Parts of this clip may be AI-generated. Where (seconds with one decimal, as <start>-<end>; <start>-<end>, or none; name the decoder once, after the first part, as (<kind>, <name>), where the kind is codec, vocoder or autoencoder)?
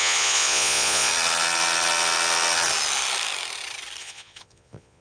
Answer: 0.0-1.1 (vocoder, Vocos); 4.0-5.0